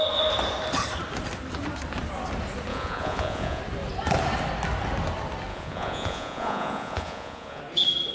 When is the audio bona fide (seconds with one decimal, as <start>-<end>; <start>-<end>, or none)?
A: 0.0-2.7; 3.6-5.5; 7.6-8.1